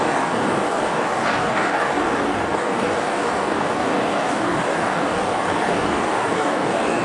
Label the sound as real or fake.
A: fake